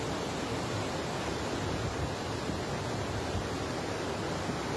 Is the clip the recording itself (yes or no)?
yes